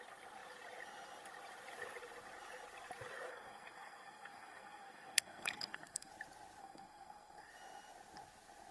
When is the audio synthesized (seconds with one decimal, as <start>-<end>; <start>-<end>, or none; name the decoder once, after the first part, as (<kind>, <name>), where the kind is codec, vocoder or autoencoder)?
3.3-6.1 (codec, SNAC); 6.6-7.5